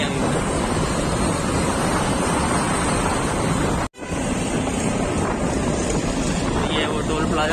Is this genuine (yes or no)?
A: yes